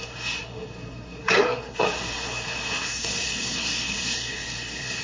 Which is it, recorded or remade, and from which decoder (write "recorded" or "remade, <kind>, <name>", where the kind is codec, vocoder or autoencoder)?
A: remade, codec, SNAC